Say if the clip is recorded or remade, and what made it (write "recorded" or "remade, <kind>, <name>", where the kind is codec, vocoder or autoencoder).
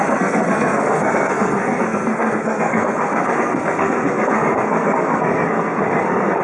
remade, codec, SNAC